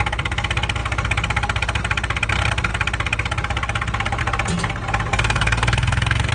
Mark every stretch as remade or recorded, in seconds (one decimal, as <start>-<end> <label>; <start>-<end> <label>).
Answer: 0.0-5.1 recorded; 5.1-6.3 remade